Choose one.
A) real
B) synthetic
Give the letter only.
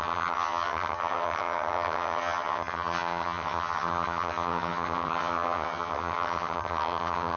B